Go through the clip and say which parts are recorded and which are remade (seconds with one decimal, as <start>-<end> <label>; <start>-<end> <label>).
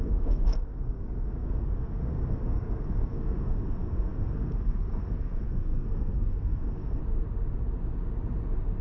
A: 0.0-7.0 remade; 7.0-8.8 recorded